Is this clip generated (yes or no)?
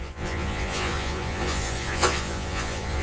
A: yes